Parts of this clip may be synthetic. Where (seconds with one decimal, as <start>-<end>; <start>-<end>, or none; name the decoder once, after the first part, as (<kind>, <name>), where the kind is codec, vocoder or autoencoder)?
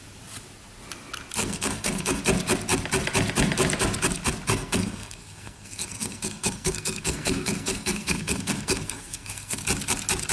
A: 1.4-2.2 (codec, SNAC); 4.5-9.6